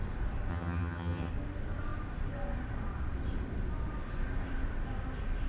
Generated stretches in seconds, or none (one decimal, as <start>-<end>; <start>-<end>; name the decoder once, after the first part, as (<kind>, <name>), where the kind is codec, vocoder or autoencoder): 0.5-1.3 (vocoder, HiFi-GAN)